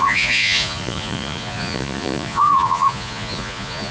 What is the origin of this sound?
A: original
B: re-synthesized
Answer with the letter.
B